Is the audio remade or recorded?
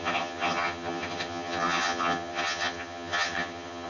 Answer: remade